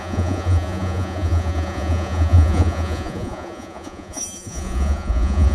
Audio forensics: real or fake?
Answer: fake